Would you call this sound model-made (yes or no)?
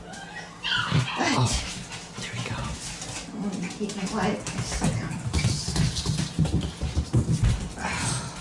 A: no